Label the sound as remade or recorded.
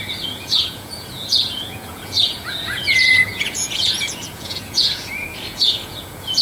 remade